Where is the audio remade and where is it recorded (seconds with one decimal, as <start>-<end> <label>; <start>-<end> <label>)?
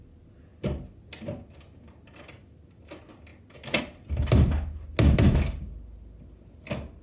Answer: 0.0-7.0 recorded